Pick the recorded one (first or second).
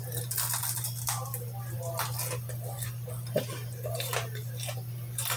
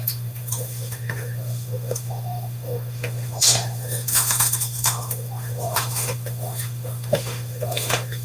first